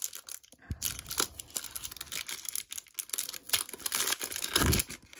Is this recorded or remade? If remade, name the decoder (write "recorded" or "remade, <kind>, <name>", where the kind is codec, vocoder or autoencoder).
recorded